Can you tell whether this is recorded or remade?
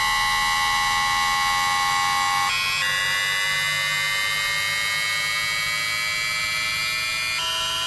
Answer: recorded